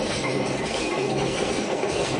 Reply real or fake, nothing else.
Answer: fake